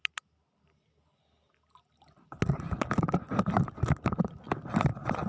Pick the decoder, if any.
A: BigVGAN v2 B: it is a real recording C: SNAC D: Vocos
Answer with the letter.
B